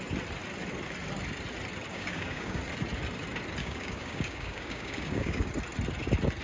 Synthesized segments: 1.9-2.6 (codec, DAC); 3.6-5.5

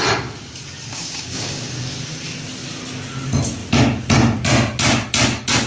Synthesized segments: 0.9-1.7 (codec, DAC)

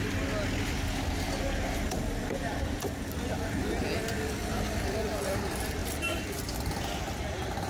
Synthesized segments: none

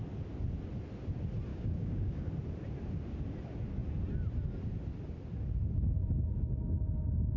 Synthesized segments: 1.5-2.3 (codec, DAC)

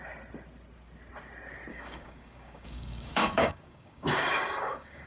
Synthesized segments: 1.7-5.1 (codec, DAC)

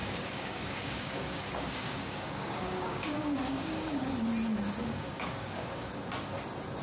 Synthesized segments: 0.0-4.1 (codec, DAC); 4.8-5.9

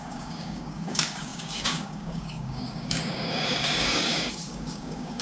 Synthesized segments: 0.0-5.2 (codec, DAC)

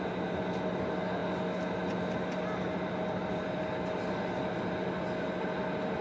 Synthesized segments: none